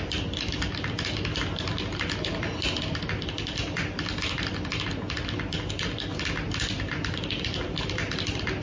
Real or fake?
real